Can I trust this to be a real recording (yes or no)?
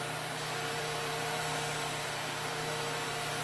no